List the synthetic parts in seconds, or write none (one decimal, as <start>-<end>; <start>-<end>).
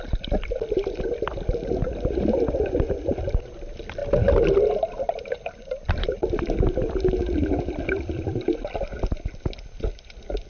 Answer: none